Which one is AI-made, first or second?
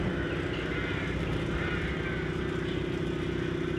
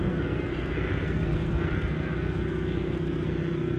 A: second